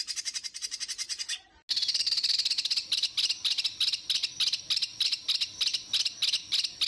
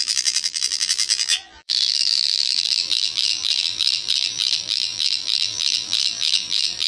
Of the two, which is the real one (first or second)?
first